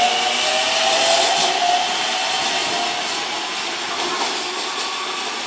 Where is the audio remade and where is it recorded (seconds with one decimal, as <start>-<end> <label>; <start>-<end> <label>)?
0.0-5.5 recorded